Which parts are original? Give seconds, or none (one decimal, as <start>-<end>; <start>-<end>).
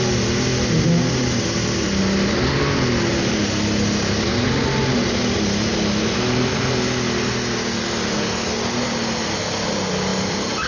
0.0-10.7